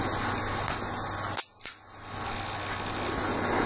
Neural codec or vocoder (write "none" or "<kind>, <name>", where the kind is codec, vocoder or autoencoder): none